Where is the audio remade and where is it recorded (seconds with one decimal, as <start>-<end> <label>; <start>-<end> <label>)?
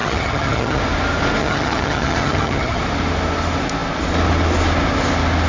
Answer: 0.0-0.8 remade; 0.8-1.4 recorded; 1.4-2.8 remade; 2.8-5.5 recorded